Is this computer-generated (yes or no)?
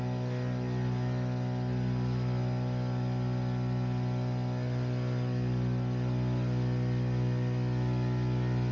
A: no